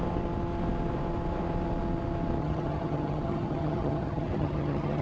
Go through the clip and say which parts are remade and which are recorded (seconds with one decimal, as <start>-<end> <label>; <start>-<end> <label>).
0.0-2.4 recorded; 2.4-5.0 remade